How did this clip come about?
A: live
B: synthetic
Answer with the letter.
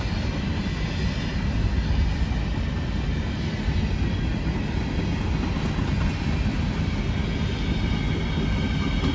A